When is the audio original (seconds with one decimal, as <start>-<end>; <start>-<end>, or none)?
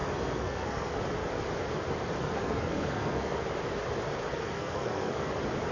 1.0-2.2; 3.4-4.3; 5.3-5.7